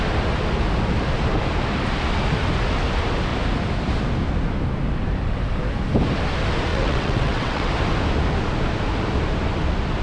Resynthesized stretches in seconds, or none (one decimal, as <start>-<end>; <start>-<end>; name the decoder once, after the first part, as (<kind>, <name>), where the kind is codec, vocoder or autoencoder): 6.7-7.7 (vocoder, WaveNeXt)